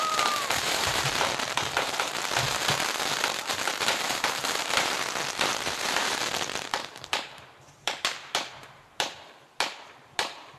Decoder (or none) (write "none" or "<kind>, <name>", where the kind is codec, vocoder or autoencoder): vocoder, BigVGAN v2